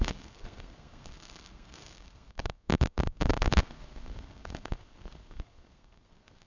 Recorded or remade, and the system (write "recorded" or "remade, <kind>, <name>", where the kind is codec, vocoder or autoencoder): remade, codec, SNAC